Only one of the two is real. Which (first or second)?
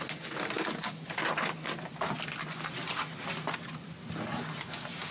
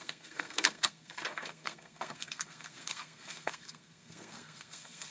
first